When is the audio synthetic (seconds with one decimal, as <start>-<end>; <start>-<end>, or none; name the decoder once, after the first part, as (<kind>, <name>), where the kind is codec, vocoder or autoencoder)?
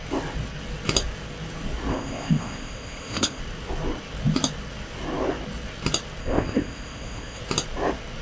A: 1.9-3.4 (codec, ZipCodec); 6.2-7.4